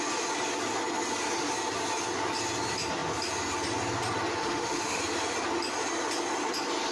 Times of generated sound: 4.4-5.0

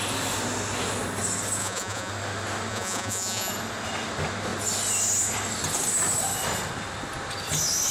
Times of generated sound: 1.6-2.1; 2.7-3.5

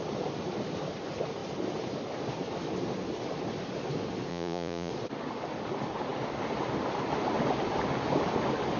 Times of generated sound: 4.3-4.9

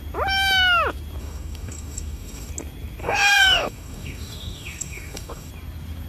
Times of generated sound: 1.2-2.5; 3.0-5.5

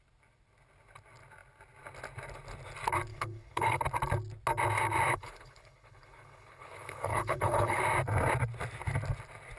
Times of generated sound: 3.1-3.8; 5.1-7.8

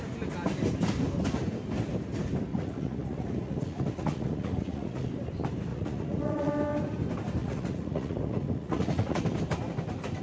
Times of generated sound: 2.5-5.1; 5.7-6.5; 7.4-9.2